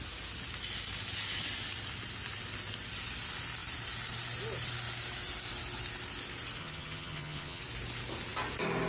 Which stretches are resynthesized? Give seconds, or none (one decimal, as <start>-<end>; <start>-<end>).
6.6-7.6